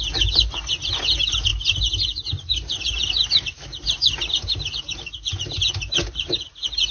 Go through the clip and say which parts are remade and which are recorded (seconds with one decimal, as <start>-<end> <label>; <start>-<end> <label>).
0.0-6.9 recorded